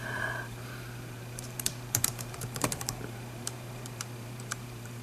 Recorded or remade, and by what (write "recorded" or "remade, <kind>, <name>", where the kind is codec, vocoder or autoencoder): remade, vocoder, BigVGAN v2